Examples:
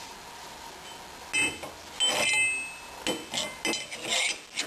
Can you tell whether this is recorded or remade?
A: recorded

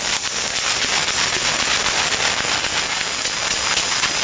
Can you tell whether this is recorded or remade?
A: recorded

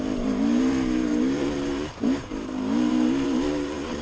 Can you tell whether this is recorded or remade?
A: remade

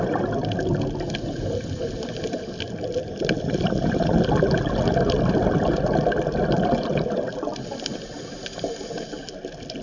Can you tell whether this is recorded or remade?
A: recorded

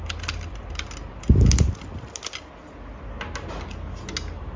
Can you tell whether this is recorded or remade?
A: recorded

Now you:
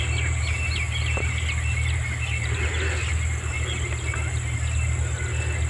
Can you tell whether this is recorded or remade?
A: recorded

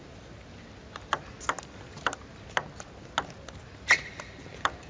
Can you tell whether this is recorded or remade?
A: recorded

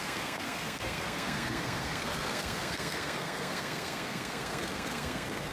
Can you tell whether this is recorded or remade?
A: remade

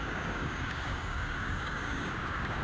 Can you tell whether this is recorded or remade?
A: remade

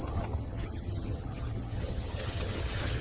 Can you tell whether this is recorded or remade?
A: remade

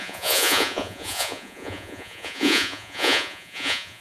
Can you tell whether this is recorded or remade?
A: remade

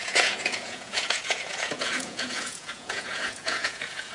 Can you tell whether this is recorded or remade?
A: remade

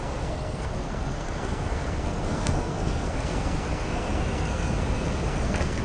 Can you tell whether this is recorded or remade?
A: remade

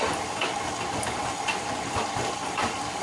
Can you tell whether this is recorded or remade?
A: recorded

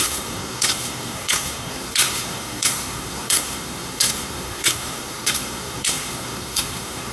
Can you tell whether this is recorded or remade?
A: remade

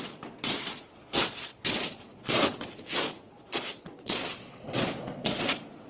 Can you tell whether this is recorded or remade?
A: remade